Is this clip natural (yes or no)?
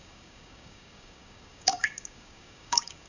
no